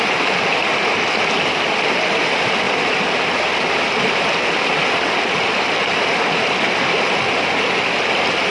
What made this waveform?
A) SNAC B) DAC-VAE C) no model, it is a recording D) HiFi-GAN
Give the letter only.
C